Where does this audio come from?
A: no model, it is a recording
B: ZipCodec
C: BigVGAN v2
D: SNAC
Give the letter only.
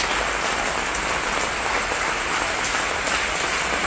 A